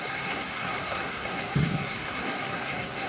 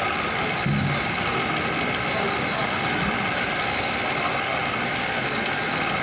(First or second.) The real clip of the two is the second